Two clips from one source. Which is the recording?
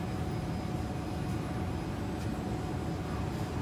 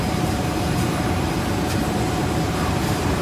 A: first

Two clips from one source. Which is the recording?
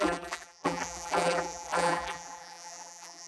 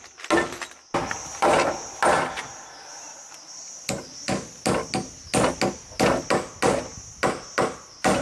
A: second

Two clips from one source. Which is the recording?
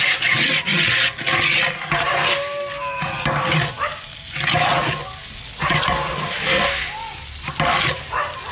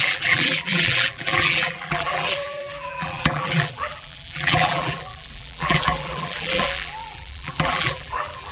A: first